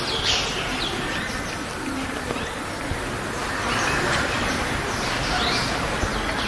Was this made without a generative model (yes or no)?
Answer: yes